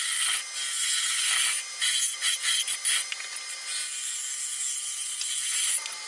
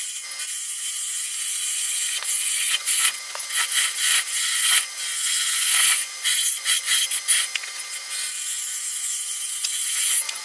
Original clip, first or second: first